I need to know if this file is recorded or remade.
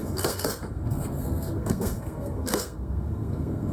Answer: remade